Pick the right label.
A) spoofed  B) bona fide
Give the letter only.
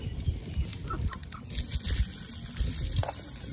B